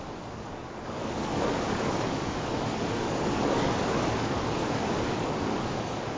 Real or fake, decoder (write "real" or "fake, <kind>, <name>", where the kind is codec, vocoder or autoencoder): fake, codec, DAC